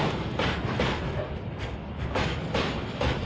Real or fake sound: real